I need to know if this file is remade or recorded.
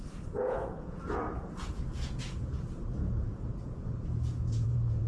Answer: remade